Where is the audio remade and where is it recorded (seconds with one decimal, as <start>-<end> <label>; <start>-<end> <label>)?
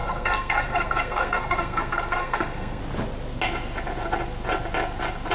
0.0-2.8 remade; 2.8-5.3 recorded